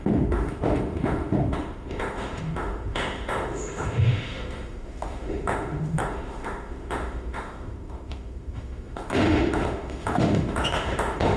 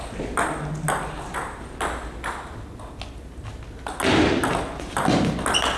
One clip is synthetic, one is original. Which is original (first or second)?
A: second